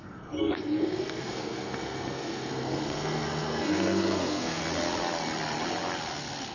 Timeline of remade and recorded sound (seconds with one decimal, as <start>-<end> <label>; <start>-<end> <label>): 0.0-4.6 remade; 4.6-6.5 recorded